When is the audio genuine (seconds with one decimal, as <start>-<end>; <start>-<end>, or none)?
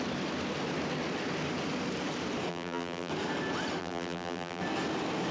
0.0-2.5; 3.1-3.8; 4.6-5.3